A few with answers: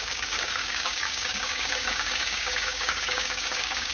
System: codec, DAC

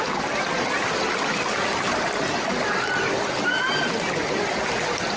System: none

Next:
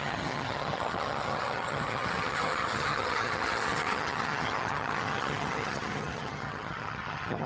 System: vocoder, HiFi-GAN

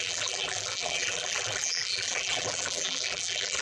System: vocoder, BigVGAN v2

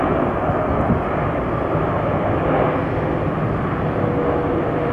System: none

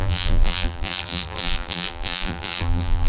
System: vocoder, BigVGAN v2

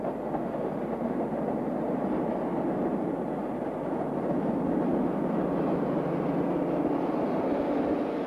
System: none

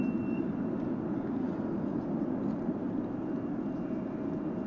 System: none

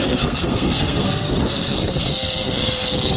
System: codec, SNAC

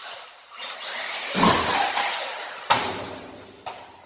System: none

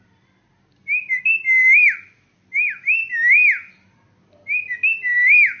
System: none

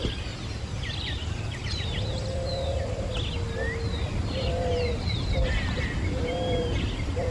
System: none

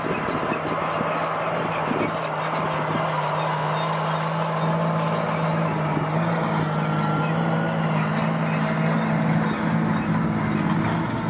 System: none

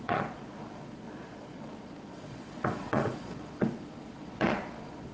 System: vocoder, Vocos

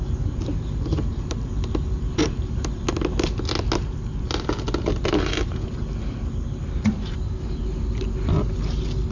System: none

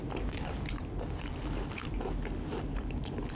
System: none